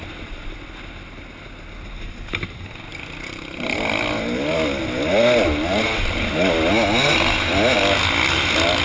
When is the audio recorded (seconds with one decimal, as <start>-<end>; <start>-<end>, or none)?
0.0-8.8